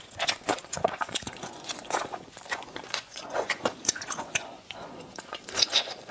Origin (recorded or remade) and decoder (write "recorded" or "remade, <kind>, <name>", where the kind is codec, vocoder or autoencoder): remade, vocoder, Vocos